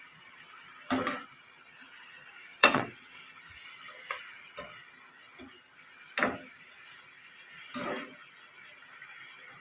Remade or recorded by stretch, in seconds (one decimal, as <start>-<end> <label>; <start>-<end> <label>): 0.0-2.5 recorded; 2.5-3.2 remade; 3.2-9.6 recorded